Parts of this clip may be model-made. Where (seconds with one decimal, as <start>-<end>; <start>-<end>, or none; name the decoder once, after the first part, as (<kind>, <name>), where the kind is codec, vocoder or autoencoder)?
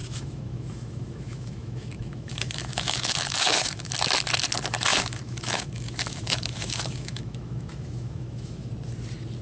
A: 0.0-3.9 (autoencoder, DAC-VAE); 4.9-8.7